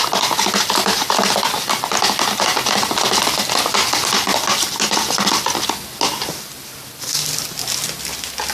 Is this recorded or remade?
recorded